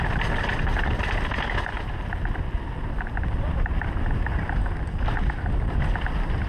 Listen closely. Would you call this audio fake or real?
real